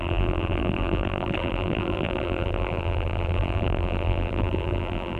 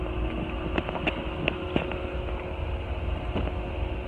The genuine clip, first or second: second